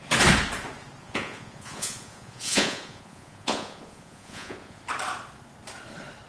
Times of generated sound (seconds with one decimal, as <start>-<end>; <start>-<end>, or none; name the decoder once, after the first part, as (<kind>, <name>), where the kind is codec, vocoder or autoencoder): 1.0-4.8 (vocoder, Vocos)